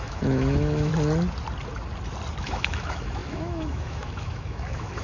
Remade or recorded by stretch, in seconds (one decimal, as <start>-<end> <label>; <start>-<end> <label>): 0.0-0.9 remade; 0.9-2.4 recorded; 2.4-5.0 remade